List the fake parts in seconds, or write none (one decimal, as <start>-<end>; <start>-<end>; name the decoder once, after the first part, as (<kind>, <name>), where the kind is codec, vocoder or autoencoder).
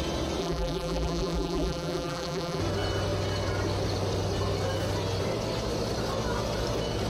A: 0.4-2.6 (vocoder, BigVGAN v2)